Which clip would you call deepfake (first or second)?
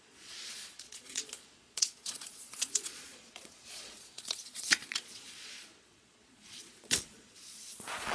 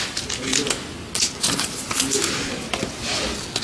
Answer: first